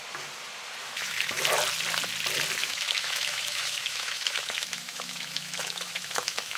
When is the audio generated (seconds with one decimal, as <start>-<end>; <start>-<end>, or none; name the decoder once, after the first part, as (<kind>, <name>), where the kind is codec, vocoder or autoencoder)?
0.8-1.4 (autoencoder, DAC-VAE); 2.6-6.6